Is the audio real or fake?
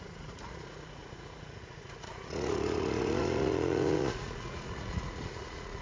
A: fake